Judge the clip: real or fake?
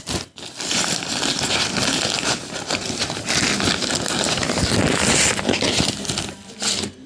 real